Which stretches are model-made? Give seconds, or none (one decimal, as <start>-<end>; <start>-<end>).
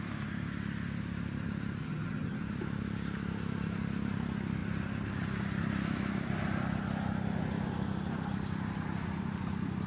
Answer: 1.8-2.4